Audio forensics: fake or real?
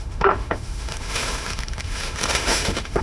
fake